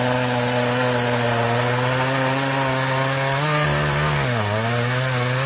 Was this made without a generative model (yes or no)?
yes